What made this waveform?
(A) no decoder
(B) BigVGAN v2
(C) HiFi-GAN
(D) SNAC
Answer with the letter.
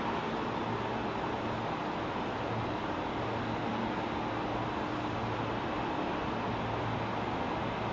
A